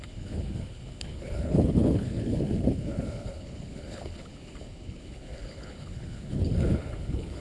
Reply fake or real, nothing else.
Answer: fake